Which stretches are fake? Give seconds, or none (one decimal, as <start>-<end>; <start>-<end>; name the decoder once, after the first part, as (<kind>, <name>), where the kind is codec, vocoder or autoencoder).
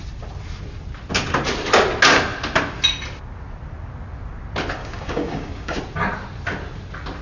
4.8-5.8 (codec, DAC)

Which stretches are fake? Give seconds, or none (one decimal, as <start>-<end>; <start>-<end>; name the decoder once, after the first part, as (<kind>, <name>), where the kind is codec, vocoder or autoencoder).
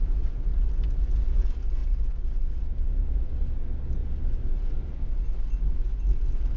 none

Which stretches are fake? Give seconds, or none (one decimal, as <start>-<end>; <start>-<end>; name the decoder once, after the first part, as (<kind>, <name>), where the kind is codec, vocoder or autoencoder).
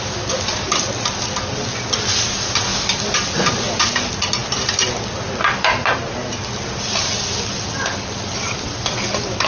none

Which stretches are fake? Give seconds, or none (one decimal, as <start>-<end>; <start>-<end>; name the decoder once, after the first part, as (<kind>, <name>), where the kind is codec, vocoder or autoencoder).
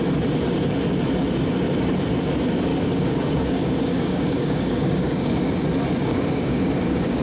2.7-5.5 (codec, DAC); 6.0-7.2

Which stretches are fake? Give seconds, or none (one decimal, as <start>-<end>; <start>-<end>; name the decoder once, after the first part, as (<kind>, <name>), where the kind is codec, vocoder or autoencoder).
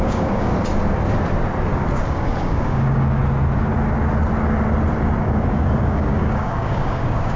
0.0-0.5 (codec, DAC); 2.0-3.2; 5.2-7.4